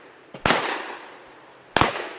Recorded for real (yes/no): yes